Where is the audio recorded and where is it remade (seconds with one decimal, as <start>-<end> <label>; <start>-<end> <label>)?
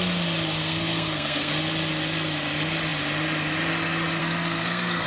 0.0-0.6 recorded; 0.6-1.5 remade; 1.5-4.2 recorded; 4.2-5.1 remade